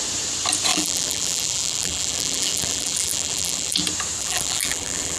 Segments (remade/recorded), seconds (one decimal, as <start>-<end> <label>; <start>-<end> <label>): 0.0-0.7 recorded; 0.7-3.8 remade; 3.8-4.2 recorded; 4.2-5.2 remade

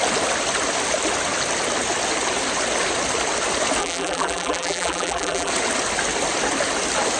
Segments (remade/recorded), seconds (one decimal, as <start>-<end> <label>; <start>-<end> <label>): 0.0-3.8 recorded; 3.8-5.5 remade; 5.5-7.2 recorded

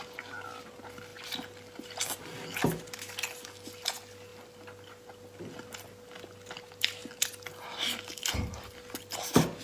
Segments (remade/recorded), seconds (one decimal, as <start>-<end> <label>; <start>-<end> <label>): 0.0-9.6 recorded

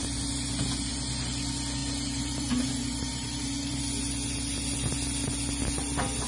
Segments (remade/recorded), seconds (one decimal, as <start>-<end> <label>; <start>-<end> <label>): 0.0-1.8 recorded; 1.8-3.8 remade; 3.8-6.3 recorded

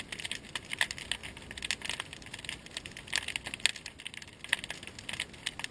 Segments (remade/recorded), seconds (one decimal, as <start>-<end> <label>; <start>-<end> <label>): 0.0-5.7 recorded

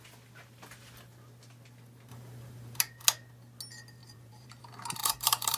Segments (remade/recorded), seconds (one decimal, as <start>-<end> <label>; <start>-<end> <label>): 0.0-2.1 recorded; 2.1-2.8 remade; 2.8-4.0 recorded; 4.0-4.6 remade; 4.6-5.0 recorded; 5.0-5.6 remade

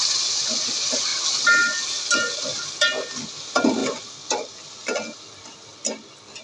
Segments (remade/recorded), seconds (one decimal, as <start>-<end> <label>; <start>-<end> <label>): 0.0-1.1 recorded; 1.1-2.6 remade; 2.6-3.8 recorded; 3.8-4.5 remade; 4.5-6.4 recorded